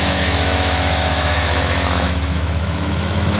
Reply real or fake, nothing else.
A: fake